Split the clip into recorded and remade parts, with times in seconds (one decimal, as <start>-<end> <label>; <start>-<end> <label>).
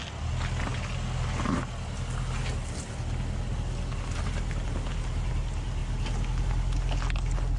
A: 0.0-7.6 recorded